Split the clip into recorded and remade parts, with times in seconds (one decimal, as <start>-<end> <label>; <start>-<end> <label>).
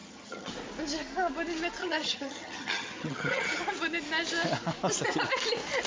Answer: 0.0-0.5 remade; 0.5-1.8 recorded; 1.8-3.6 remade; 3.6-5.9 recorded